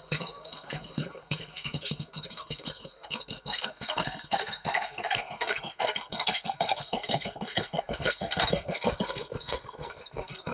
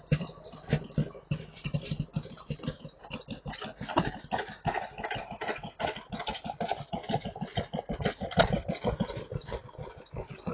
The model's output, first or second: first